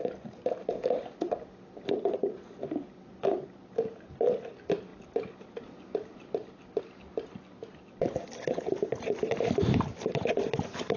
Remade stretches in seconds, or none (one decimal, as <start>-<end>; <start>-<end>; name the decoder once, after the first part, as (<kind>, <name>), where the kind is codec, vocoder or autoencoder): none